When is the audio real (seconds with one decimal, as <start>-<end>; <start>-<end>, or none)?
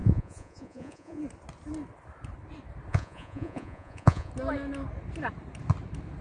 1.2-2.9; 4.3-6.2